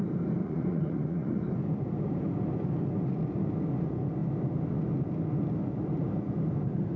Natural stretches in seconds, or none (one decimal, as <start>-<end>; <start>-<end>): 0.0-0.4; 1.4-7.0